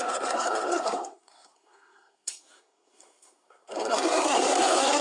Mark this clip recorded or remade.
remade